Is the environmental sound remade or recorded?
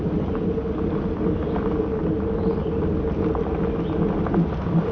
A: recorded